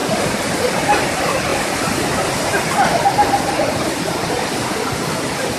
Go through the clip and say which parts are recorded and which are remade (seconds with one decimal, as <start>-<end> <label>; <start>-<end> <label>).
0.0-5.6 recorded